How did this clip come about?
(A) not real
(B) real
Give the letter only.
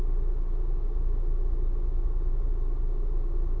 B